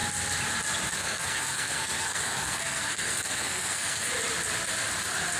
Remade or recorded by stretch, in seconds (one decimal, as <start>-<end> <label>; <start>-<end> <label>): 0.0-0.9 recorded; 0.9-4.1 remade; 4.1-5.4 recorded